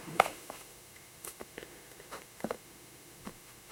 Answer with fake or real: fake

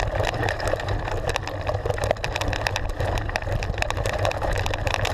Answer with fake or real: real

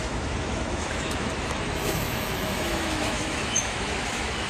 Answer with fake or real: fake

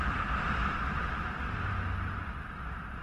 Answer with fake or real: real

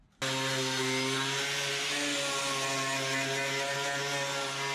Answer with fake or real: real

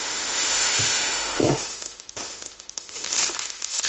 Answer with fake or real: fake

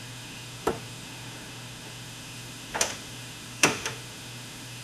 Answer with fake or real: fake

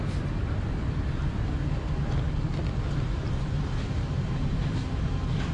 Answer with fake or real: real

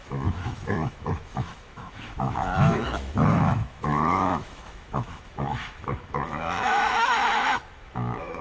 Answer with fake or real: fake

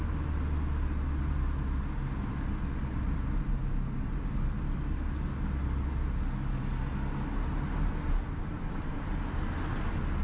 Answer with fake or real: real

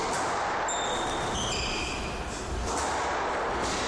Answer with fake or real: real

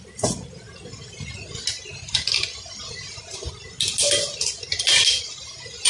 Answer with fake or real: real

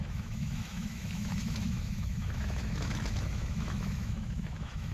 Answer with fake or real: fake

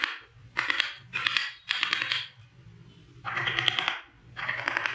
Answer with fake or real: real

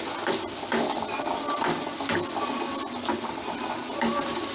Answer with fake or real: real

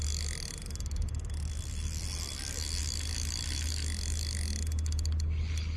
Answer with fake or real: real